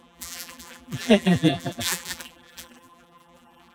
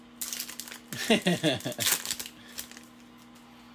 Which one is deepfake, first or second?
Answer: first